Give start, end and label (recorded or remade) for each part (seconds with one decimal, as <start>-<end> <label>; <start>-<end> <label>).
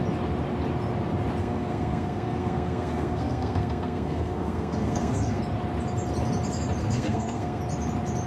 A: 0.0-1.4 recorded; 1.4-5.4 remade; 5.4-6.8 recorded; 6.8-7.6 remade; 7.6-8.3 recorded